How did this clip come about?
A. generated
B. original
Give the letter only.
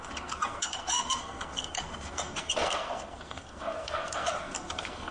A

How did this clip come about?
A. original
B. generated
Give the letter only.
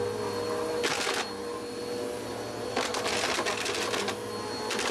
A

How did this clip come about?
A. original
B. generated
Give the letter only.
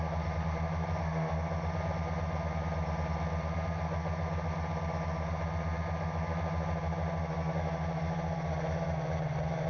A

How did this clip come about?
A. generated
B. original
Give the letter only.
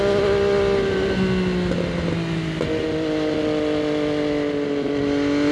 B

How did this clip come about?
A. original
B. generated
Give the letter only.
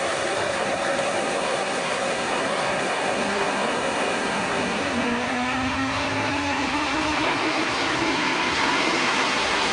B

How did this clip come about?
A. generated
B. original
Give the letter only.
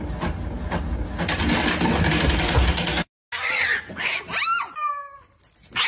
B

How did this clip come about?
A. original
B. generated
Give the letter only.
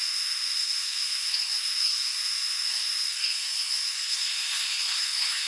B